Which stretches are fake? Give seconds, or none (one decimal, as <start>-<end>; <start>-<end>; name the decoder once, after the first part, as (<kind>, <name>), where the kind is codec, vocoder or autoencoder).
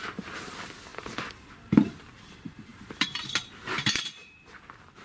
0.0-5.0 (vocoder, BigVGAN v2)